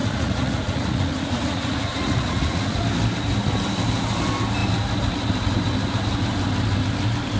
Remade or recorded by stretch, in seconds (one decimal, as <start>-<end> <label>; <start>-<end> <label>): 0.0-2.8 remade; 2.8-7.4 recorded